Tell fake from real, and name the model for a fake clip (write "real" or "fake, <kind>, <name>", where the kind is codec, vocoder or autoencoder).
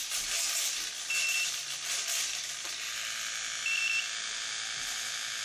real